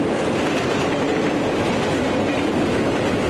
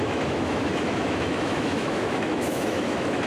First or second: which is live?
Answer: first